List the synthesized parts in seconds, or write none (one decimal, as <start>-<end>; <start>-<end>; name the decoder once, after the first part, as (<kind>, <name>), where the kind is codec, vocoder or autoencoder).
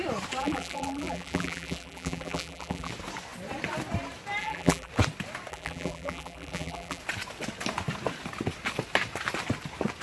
0.4-2.9 (vocoder, BigVGAN v2); 4.4-4.9; 5.5-7.0